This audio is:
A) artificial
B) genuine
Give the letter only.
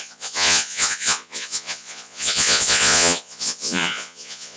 A